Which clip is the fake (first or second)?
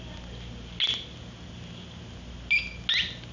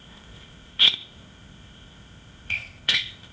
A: second